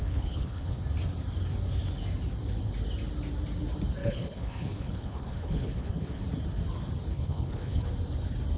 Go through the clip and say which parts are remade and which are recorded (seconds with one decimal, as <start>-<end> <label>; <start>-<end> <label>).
0.0-0.8 remade; 0.8-4.0 recorded; 4.0-6.2 remade; 6.2-7.1 recorded; 7.1-7.9 remade; 7.9-8.6 recorded